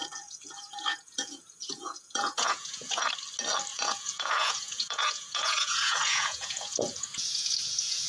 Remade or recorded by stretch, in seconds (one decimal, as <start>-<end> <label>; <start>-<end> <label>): 0.0-3.1 remade; 3.1-3.7 recorded; 3.7-8.1 remade